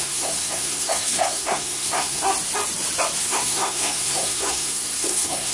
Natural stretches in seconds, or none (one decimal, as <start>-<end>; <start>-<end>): 2.2-3.2